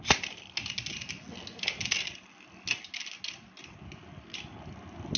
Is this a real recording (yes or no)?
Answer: yes